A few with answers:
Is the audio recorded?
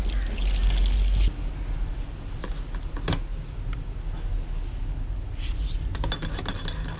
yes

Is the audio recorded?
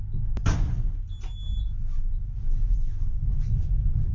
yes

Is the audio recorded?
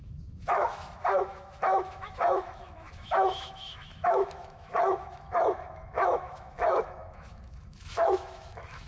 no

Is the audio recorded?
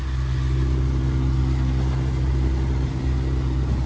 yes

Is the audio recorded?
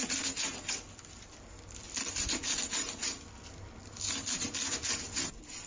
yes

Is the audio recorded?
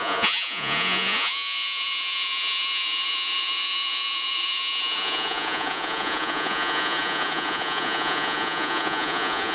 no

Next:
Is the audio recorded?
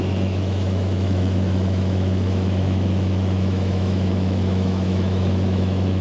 no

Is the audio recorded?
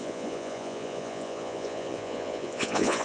no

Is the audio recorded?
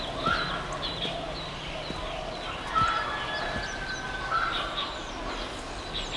yes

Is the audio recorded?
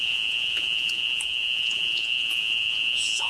no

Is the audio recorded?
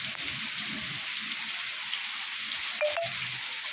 yes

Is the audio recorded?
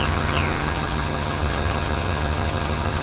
no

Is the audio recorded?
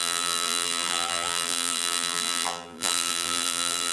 no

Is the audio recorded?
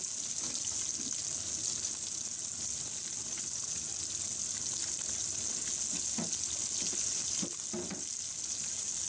yes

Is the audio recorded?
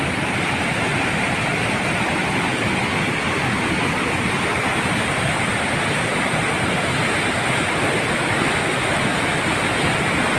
yes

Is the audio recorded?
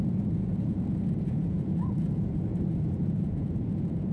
no